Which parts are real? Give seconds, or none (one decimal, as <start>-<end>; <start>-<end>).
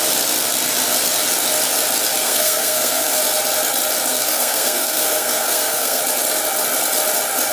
0.0-2.2; 3.2-4.1; 6.0-7.5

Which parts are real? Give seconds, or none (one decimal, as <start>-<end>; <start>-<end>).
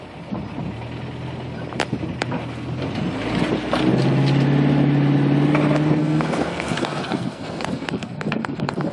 0.0-6.0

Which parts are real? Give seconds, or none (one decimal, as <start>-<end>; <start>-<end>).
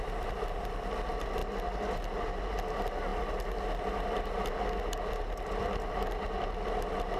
0.0-7.2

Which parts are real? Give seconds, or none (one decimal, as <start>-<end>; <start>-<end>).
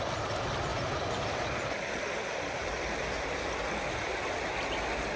0.0-5.2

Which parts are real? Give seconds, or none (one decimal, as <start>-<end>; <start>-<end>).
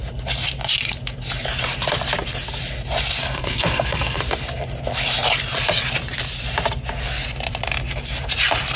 0.0-3.2; 4.2-8.8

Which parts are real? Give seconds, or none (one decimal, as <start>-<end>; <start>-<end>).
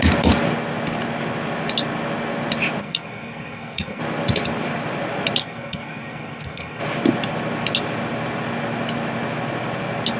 0.0-2.8; 4.0-5.4; 6.8-10.2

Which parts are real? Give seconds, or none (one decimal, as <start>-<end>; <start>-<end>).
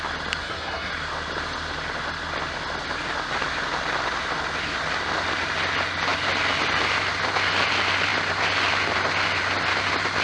0.0-0.4; 0.9-10.2